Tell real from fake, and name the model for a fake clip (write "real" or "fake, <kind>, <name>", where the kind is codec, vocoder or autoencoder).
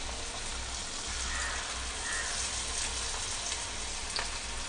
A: real